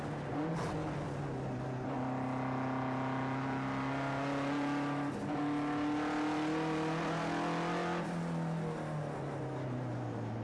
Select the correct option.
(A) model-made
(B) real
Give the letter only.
B